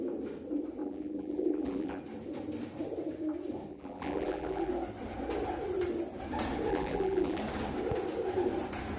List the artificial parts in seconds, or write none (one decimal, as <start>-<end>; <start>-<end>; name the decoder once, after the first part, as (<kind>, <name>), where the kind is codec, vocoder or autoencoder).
0.8-2.0 (vocoder, BigVGAN v2); 3.7-4.7; 6.7-7.4